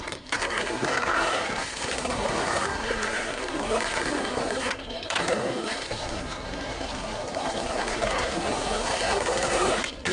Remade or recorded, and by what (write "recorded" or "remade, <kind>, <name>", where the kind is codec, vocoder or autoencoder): remade, codec, SNAC